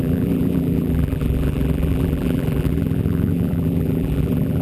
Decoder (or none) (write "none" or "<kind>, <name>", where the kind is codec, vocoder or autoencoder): vocoder, BigVGAN v2